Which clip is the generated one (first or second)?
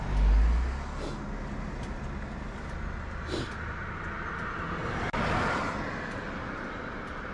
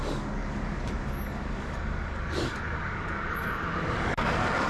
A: second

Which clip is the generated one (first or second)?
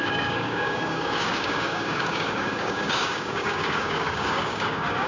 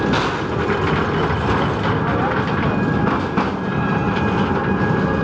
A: first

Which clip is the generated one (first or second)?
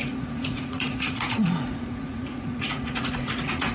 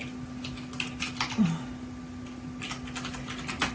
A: first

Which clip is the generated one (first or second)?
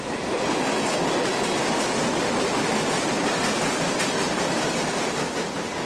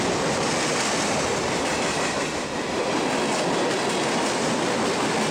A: first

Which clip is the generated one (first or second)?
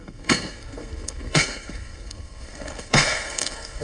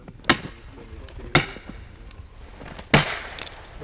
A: first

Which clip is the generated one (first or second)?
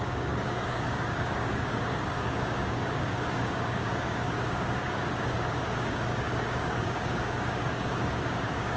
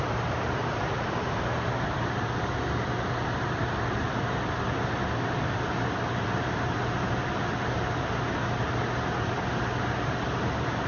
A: first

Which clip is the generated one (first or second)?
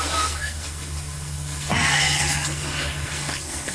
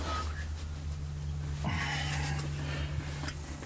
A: first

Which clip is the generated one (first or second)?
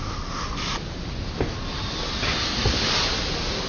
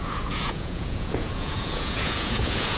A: second